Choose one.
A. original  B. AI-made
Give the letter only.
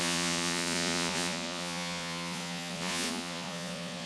B